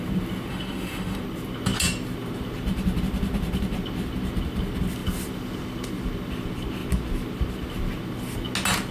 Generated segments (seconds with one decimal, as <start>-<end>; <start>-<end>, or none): 0.5-1.2